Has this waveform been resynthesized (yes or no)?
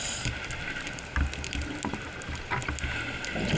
no